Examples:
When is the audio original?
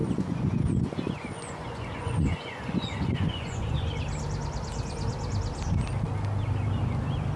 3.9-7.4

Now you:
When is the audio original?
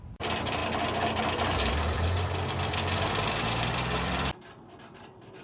0.6-1.7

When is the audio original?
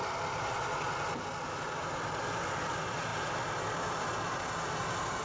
0.0-5.2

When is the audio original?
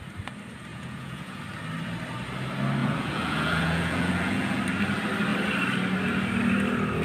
0.0-0.7; 1.4-2.8; 4.6-7.0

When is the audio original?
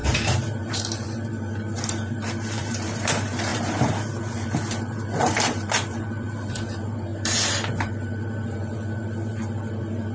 none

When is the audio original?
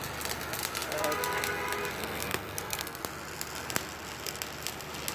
0.0-2.0; 3.0-5.1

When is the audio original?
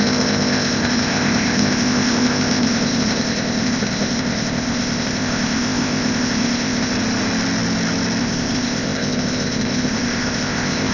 6.9-8.2